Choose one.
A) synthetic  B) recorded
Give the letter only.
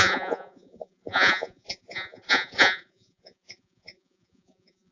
A